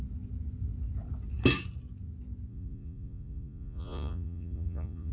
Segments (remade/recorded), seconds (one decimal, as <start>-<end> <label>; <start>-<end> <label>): 0.0-2.5 recorded; 2.5-5.1 remade